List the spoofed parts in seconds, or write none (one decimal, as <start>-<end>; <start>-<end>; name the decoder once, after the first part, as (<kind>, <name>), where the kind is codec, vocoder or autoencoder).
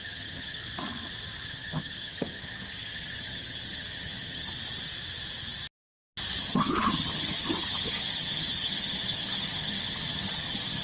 0.0-0.6 (vocoder, HiFi-GAN); 1.5-4.5; 6.4-10.8